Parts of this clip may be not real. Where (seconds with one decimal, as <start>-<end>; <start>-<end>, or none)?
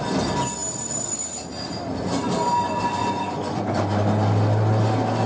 3.0-3.6